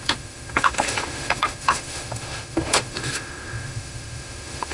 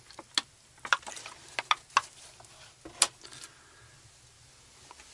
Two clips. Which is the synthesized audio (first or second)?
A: first